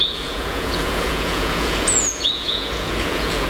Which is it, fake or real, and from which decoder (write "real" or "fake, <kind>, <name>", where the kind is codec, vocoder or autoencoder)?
fake, vocoder, Vocos